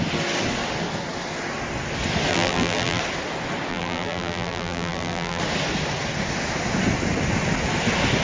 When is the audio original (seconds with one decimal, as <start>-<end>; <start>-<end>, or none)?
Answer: 0.0-2.3; 3.0-3.7; 5.4-8.2